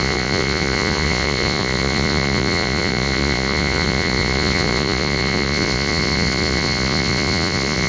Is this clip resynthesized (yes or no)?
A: yes